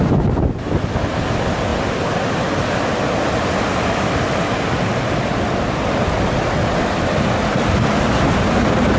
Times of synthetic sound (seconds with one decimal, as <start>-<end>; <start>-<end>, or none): none